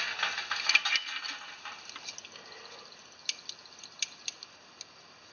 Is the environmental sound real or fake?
real